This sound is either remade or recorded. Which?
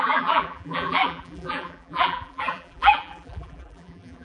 remade